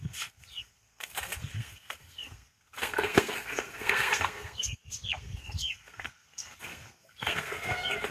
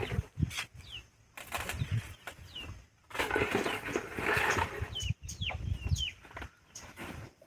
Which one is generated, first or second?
first